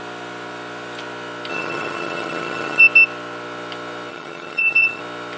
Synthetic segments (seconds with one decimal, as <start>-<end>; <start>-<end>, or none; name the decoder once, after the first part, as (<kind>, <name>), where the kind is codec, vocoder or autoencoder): 1.5-2.8 (vocoder, HiFi-GAN); 4.1-5.0